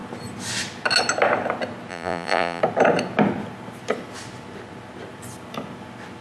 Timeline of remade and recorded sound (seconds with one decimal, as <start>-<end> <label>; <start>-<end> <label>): 0.0-1.9 recorded; 1.9-2.6 remade; 2.6-6.2 recorded